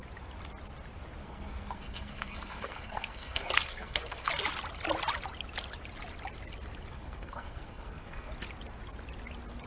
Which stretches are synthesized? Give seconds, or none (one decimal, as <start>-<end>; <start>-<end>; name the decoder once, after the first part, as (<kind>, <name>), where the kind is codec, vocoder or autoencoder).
1.2-4.3 (codec, SNAC); 6.9-8.3